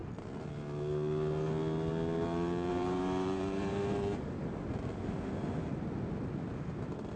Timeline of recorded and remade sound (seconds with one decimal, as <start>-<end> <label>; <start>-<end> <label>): 0.0-2.7 recorded; 2.7-4.2 remade; 4.2-7.2 recorded